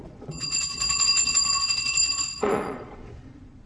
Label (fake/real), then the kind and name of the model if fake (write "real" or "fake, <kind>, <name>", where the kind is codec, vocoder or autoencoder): fake, vocoder, Vocos